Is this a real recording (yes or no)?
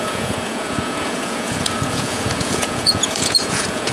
no